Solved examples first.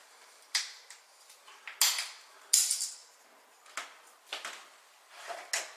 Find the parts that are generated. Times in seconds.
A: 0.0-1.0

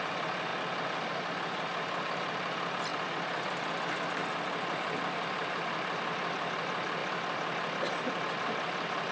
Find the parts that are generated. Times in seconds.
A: 2.9-3.8; 7.0-8.2

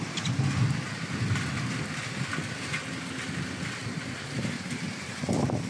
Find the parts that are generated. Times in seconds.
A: 3.8-5.2

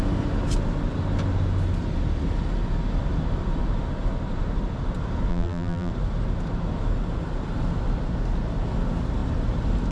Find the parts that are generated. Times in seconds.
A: 5.3-5.9

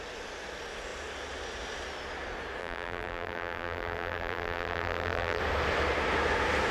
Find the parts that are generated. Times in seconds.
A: 2.6-5.4

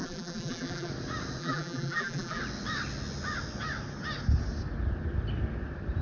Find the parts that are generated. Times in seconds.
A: 0.0-0.9; 1.4-2.4

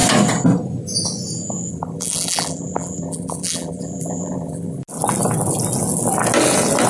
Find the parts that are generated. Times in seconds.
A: 1.7-4.8

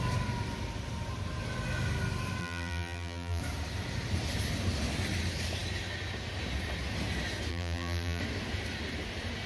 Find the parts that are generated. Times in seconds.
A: 2.4-3.4; 7.5-8.2